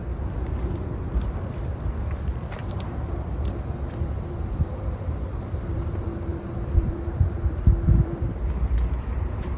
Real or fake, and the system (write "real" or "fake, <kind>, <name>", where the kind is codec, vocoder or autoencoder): fake, vocoder, BigVGAN v2